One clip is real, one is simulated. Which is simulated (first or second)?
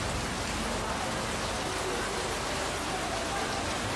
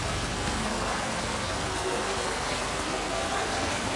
second